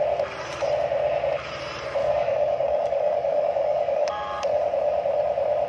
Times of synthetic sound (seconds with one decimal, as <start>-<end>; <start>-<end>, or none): 2.0-4.1